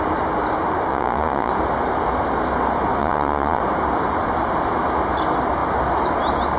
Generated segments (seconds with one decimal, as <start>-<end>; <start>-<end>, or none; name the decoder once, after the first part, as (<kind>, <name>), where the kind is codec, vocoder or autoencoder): 0.9-1.5 (vocoder, Vocos); 3.0-3.6